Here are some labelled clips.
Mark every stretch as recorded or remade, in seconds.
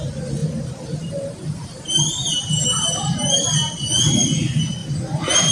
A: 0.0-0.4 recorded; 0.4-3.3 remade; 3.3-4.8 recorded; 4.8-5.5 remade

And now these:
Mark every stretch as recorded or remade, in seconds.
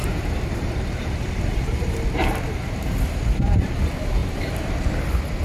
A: 0.0-3.2 remade; 3.2-4.2 recorded; 4.2-5.0 remade; 5.0-5.4 recorded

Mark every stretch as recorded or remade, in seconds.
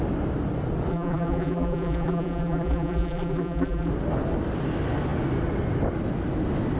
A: 0.0-0.9 recorded; 0.9-3.9 remade; 3.9-6.8 recorded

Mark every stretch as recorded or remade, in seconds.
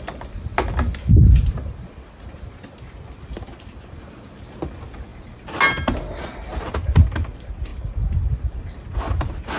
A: 0.0-9.6 recorded